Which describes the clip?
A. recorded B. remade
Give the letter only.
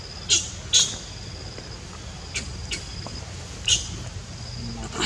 A